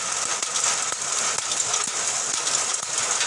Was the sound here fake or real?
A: real